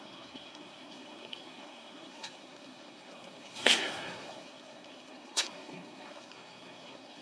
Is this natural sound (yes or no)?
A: no